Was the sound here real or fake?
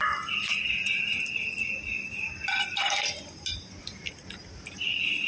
real